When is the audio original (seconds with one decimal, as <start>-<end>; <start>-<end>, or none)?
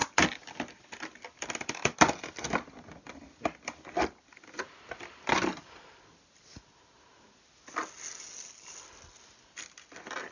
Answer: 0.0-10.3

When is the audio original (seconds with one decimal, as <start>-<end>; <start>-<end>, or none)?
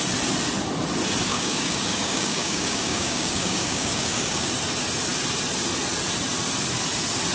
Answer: 0.0-1.3; 4.5-7.3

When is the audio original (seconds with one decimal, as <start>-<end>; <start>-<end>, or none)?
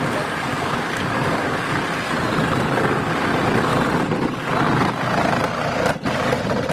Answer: 0.0-0.5; 1.7-6.7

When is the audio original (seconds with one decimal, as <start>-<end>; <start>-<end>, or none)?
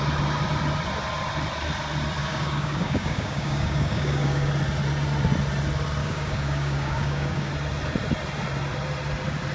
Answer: 0.0-2.2; 4.5-6.0; 7.5-9.5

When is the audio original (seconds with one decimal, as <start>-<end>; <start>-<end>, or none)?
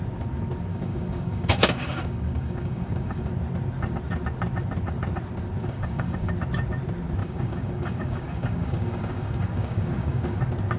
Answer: 0.0-0.7; 3.3-5.6; 6.3-7.2; 10.4-10.8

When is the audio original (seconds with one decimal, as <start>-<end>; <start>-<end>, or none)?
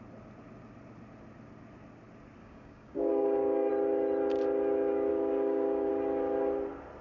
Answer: 0.0-2.4; 3.7-5.1; 5.9-7.0